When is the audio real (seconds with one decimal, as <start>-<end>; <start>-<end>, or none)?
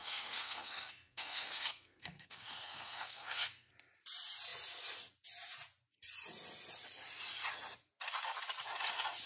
3.7-9.3